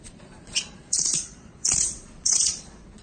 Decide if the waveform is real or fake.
fake